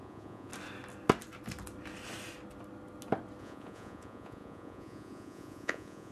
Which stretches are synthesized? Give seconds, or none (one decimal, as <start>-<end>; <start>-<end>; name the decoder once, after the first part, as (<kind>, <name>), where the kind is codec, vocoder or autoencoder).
0.0-0.5 (vocoder, Vocos); 3.4-6.1

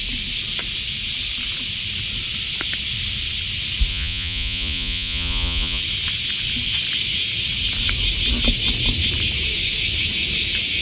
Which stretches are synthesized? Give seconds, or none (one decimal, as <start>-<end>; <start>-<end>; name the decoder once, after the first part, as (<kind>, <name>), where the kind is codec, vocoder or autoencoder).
3.9-5.8 (vocoder, Vocos)

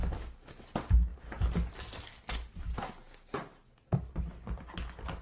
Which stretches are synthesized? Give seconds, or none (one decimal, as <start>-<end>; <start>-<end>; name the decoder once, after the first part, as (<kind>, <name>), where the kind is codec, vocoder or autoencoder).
none